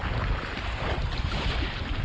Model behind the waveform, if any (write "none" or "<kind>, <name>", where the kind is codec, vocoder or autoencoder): none